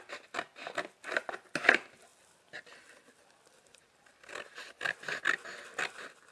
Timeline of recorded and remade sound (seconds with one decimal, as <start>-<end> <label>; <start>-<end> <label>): 0.0-6.3 recorded